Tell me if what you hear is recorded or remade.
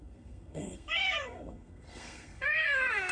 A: remade